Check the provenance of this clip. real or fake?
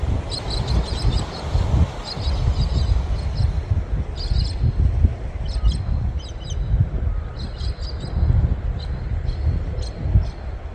real